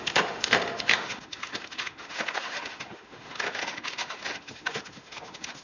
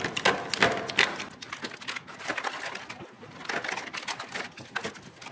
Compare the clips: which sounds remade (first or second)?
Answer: first